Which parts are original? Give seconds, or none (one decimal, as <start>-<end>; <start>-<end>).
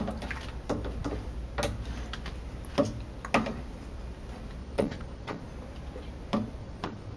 0.0-4.6; 5.4-6.6